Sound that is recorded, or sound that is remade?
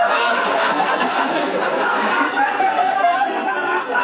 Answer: remade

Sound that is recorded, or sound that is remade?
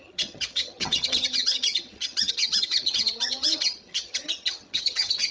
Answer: remade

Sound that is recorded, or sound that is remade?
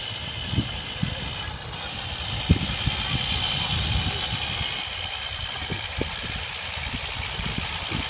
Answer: recorded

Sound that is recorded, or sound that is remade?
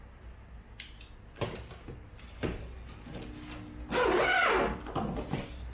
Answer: recorded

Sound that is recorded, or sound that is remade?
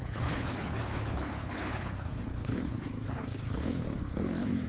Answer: remade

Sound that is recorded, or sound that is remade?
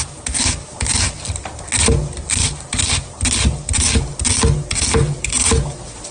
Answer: recorded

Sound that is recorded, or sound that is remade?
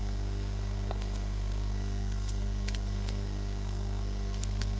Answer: remade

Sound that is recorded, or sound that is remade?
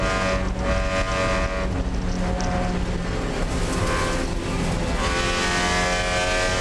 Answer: recorded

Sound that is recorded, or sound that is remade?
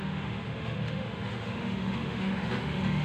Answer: remade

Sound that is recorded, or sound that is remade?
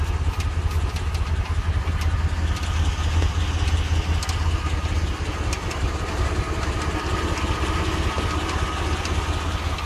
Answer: recorded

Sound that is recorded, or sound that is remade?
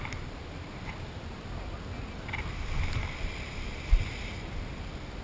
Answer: recorded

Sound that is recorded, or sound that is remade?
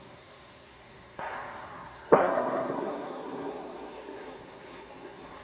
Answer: remade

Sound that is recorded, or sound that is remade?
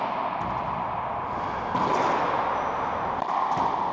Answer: recorded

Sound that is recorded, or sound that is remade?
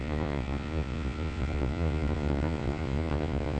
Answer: remade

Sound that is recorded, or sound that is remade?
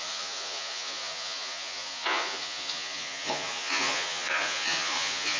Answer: remade